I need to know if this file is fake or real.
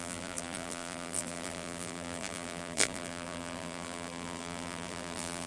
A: fake